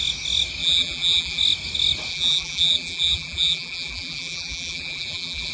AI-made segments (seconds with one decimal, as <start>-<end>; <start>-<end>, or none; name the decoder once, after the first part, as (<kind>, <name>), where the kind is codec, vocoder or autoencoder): 0.6-1.4 (vocoder, BigVGAN v2); 2.1-5.5